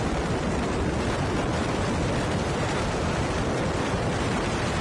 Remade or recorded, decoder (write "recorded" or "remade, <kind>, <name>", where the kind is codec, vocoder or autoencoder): recorded